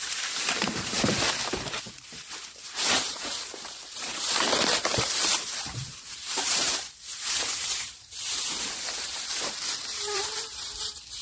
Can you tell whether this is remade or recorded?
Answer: remade